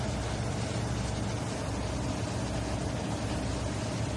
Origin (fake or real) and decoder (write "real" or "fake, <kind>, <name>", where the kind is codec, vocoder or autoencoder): real